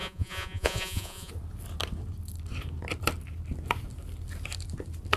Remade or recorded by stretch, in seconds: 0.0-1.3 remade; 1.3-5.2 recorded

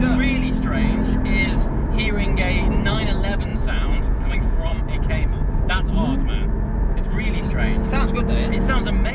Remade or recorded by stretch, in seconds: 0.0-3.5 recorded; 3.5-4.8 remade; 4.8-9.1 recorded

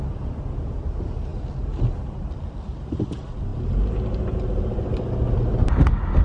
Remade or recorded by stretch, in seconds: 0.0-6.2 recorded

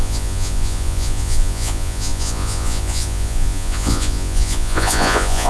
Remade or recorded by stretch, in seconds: 0.0-5.5 remade

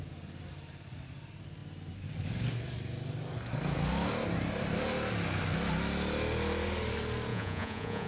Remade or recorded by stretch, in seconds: 0.0-7.3 recorded; 7.3-8.1 remade

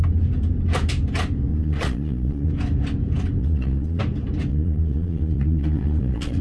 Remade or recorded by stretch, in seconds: 0.0-1.5 recorded; 1.5-2.5 remade; 2.5-3.4 recorded; 3.4-4.0 remade; 4.0-4.5 recorded; 4.5-6.4 remade

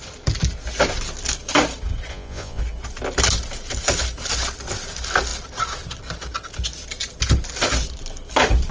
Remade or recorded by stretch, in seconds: 0.0-2.1 recorded; 2.1-2.6 remade; 2.6-8.7 recorded

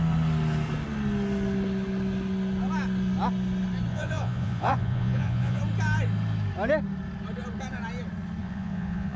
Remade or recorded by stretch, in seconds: 0.0-3.9 recorded; 3.9-5.6 remade; 5.6-8.4 recorded; 8.4-9.2 remade